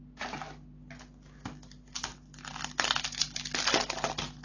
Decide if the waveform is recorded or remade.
recorded